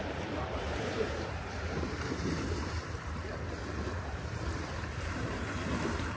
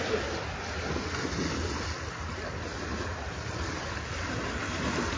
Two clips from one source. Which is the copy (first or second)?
first